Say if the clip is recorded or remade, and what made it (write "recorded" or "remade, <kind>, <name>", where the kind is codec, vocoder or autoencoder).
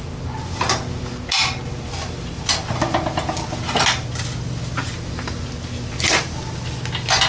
recorded